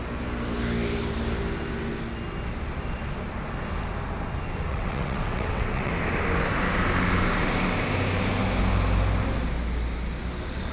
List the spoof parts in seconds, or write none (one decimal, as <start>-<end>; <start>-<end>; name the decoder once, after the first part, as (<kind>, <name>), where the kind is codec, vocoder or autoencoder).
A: 4.7-5.9 (vocoder, WaveNeXt)